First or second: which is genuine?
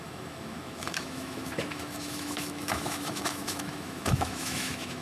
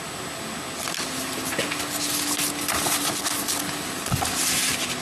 second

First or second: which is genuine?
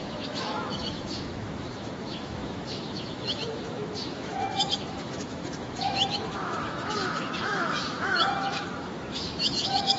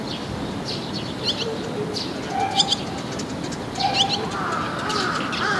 second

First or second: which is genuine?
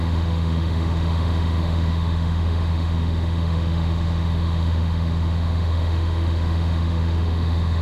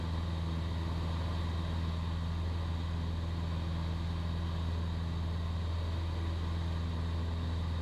second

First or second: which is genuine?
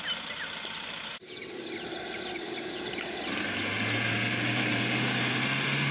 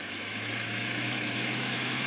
first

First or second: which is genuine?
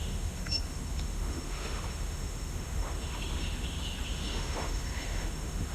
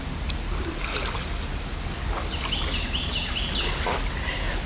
second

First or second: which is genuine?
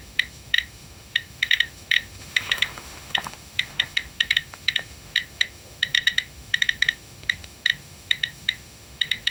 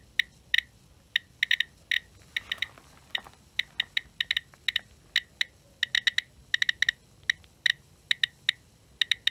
second